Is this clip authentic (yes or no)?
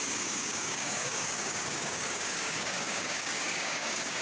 no